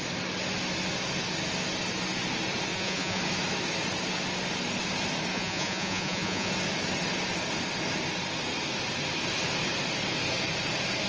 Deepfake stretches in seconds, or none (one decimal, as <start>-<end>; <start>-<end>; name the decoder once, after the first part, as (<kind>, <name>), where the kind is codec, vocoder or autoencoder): 2.7-3.2 (vocoder, Vocos); 5.3-6.5